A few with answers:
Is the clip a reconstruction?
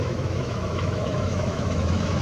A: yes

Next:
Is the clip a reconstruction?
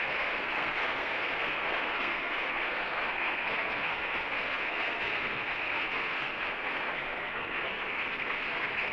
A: yes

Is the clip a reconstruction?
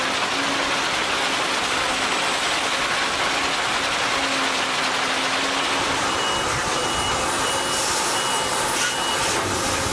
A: no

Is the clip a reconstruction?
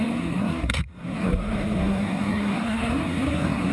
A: yes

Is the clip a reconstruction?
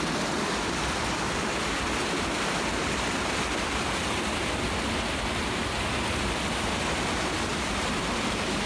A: no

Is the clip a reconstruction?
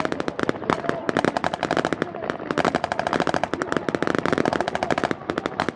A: no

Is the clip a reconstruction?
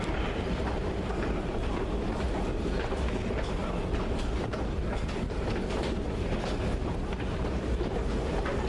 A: no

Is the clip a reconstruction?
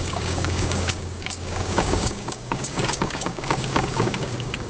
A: yes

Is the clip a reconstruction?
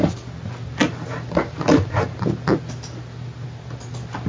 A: no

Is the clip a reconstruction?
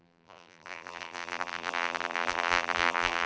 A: yes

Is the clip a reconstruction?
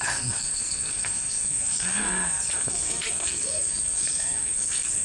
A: yes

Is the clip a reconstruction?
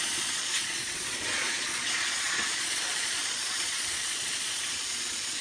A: yes